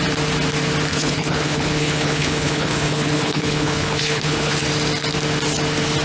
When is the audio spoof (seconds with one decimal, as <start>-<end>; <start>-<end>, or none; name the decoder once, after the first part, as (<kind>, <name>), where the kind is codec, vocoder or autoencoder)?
0.9-4.5 (codec, HILCodec)